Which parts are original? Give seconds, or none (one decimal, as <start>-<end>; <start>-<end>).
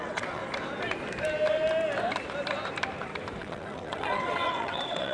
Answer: 0.4-3.4